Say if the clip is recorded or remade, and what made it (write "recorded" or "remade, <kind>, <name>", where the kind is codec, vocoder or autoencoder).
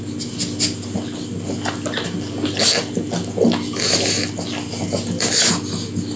recorded